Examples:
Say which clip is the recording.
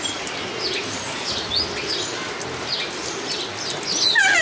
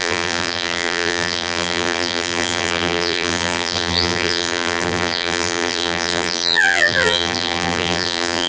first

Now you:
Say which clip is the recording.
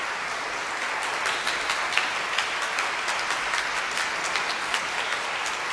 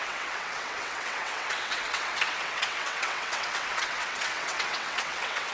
first